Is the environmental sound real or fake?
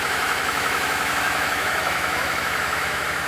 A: fake